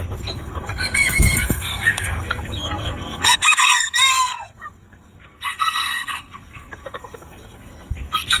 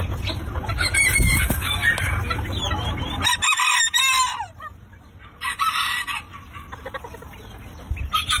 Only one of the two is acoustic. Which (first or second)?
second